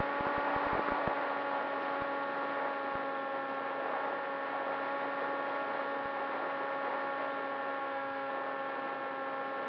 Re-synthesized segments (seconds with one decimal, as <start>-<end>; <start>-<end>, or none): 7.8-8.3